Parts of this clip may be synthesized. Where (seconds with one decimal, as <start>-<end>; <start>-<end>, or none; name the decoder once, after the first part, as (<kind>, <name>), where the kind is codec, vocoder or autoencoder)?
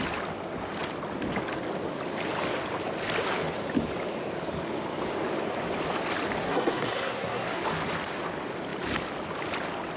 6.4-7.6 (codec, SNAC)